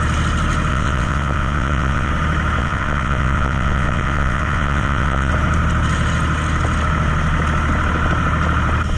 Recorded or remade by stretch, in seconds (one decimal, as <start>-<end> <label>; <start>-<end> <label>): 0.0-0.7 recorded; 0.7-2.1 remade; 2.1-2.6 recorded; 2.6-5.3 remade; 5.3-9.0 recorded

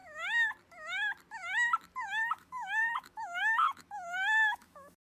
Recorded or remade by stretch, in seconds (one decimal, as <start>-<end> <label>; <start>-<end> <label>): 0.0-2.2 recorded; 2.2-5.0 remade

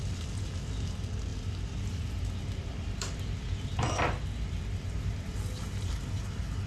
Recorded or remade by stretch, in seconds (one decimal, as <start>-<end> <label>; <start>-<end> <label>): 0.0-6.7 recorded

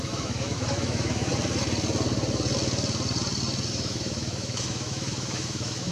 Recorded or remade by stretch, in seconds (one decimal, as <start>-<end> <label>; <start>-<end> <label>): 0.0-1.3 remade; 1.3-3.7 recorded; 3.7-5.9 remade

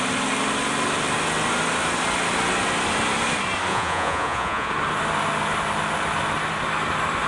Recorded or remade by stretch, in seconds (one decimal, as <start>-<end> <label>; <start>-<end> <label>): 0.0-3.7 recorded; 3.7-4.7 remade; 4.7-7.3 recorded

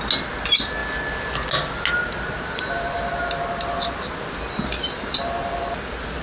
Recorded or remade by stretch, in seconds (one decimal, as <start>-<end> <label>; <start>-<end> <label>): 0.0-6.2 recorded